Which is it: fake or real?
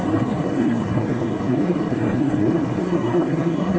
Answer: fake